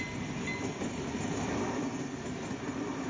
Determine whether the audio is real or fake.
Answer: real